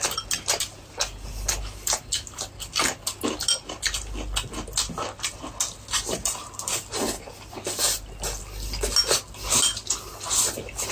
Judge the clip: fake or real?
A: real